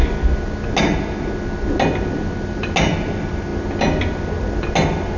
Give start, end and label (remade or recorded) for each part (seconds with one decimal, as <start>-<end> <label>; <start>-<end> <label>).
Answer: 0.0-5.2 recorded